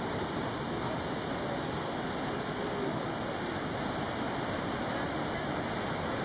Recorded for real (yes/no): yes